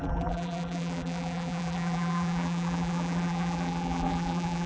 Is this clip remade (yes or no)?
yes